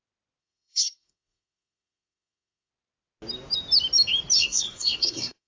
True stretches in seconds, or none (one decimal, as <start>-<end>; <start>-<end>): 0.0-0.4; 2.7-4.4